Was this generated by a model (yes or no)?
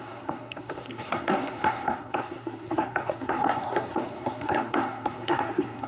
yes